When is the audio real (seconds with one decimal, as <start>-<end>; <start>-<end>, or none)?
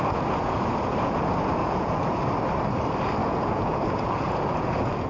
1.2-1.6; 2.2-3.2